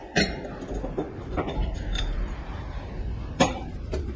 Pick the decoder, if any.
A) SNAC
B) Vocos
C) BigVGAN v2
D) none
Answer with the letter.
C